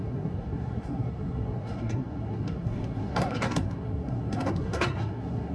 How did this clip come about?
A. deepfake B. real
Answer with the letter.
A